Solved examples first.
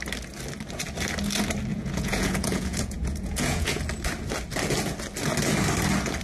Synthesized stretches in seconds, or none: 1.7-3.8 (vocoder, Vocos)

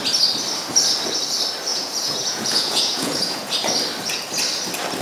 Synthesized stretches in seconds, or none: 1.7-3.7 (vocoder, Vocos)